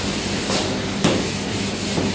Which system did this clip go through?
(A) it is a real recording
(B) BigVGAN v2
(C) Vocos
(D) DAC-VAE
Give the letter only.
A